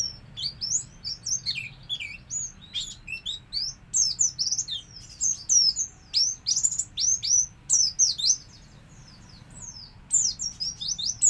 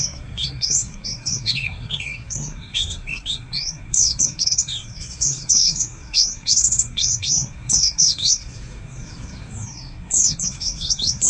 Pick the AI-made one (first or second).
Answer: second